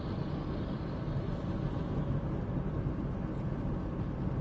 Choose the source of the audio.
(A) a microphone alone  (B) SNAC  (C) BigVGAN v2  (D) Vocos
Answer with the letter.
A